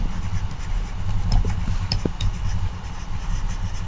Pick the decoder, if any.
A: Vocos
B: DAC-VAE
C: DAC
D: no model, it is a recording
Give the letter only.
D